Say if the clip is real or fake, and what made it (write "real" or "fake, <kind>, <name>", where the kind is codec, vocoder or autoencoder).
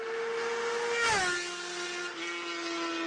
real